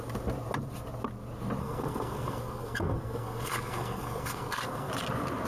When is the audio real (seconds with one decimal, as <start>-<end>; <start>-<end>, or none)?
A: 0.0-1.6; 4.9-5.5